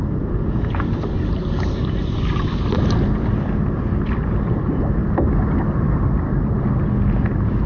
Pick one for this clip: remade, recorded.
recorded